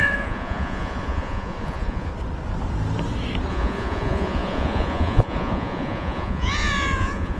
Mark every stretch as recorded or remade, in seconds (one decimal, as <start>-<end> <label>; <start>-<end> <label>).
0.0-2.1 remade; 2.1-3.5 recorded; 3.5-7.4 remade